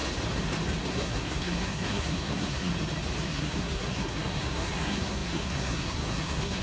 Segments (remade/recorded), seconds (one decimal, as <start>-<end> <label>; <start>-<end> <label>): 0.0-0.9 recorded; 0.9-2.7 remade; 2.7-3.2 recorded; 3.2-6.6 remade